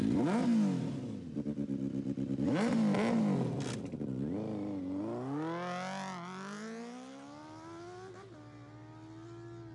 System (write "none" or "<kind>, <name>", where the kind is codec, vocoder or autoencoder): none